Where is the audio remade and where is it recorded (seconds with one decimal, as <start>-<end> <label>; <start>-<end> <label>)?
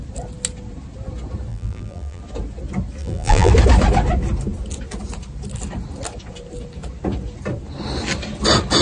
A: 0.0-1.5 recorded; 1.5-2.2 remade; 2.2-3.0 recorded; 3.0-3.5 remade; 3.5-8.8 recorded